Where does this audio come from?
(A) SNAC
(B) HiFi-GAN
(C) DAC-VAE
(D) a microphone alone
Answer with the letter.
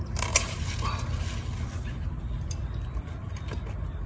D